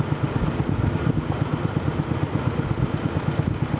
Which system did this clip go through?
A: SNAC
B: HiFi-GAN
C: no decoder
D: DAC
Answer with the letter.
C